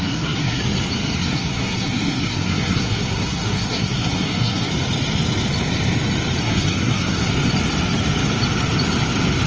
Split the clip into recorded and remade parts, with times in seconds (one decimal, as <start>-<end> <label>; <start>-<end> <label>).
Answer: 0.0-0.6 remade; 0.6-1.2 recorded; 1.2-4.7 remade; 4.7-6.4 recorded; 6.4-7.3 remade; 7.3-9.5 recorded